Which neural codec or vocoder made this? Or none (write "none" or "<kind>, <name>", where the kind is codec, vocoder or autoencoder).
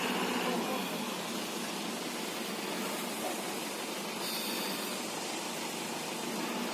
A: none